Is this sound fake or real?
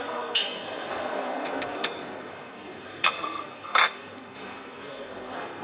fake